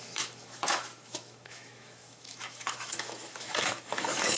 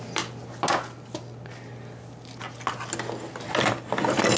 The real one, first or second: second